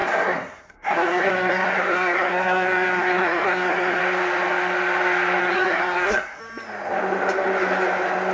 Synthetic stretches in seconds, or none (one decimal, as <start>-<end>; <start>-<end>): 0.0-4.0; 5.4-6.4